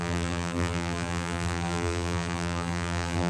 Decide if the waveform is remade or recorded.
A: remade